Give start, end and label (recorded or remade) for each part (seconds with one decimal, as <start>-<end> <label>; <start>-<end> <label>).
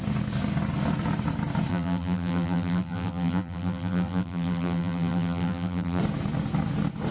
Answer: 0.0-1.7 recorded; 1.7-6.0 remade; 6.0-7.1 recorded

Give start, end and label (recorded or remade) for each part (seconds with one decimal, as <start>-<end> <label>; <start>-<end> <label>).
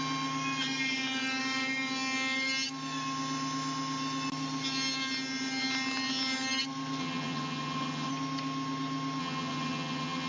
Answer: 0.0-7.0 recorded; 7.0-8.1 remade; 8.1-9.2 recorded; 9.2-10.3 remade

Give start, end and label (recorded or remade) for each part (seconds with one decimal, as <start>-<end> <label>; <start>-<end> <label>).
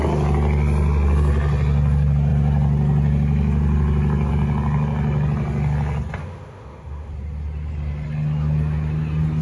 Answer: 0.0-6.2 recorded; 6.2-7.1 remade; 7.1-9.4 recorded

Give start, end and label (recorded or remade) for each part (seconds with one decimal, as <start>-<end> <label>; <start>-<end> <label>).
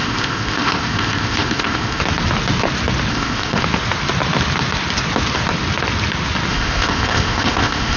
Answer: 0.0-2.0 remade; 2.0-3.1 recorded; 3.1-3.6 remade; 3.6-6.5 recorded; 6.5-8.0 remade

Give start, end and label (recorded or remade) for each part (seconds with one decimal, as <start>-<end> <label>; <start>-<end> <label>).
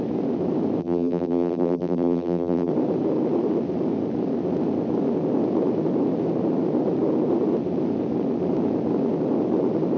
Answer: 0.0-0.8 recorded; 0.8-2.7 remade; 2.7-10.0 recorded